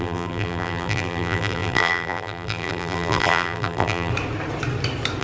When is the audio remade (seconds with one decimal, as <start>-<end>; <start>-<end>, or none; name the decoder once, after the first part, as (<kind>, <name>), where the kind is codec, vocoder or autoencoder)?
0.0-4.1 (vocoder, BigVGAN v2)